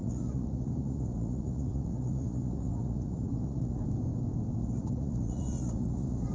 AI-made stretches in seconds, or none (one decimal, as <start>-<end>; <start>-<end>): 0.0-3.8; 4.6-6.3